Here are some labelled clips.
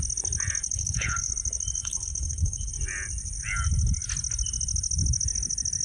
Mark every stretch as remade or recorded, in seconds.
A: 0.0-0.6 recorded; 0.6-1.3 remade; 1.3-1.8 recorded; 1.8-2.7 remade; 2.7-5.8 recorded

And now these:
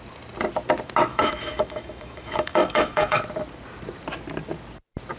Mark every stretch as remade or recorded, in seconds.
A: 0.0-1.1 recorded; 1.1-3.2 remade; 3.2-5.2 recorded

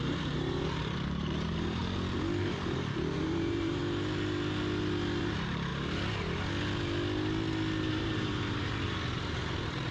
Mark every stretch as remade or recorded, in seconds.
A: 0.0-1.8 remade; 1.8-2.4 recorded; 2.4-3.8 remade; 3.8-5.2 recorded; 5.2-5.7 remade; 5.7-7.8 recorded; 7.8-9.9 remade

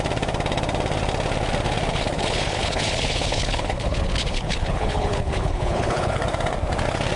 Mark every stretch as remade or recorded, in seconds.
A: 0.0-1.9 recorded; 1.9-6.2 remade; 6.2-7.2 recorded

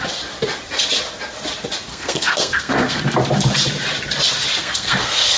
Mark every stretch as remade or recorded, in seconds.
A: 0.0-1.9 recorded; 1.9-3.0 remade; 3.0-4.6 recorded; 4.6-5.4 remade

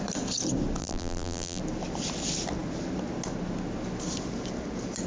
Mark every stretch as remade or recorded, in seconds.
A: 0.0-0.8 recorded; 0.8-1.6 remade; 1.6-5.1 recorded

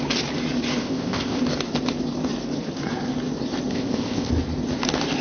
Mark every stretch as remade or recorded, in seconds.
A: 0.0-0.8 recorded; 0.8-1.4 remade; 1.4-3.7 recorded; 3.7-4.3 remade; 4.3-5.2 recorded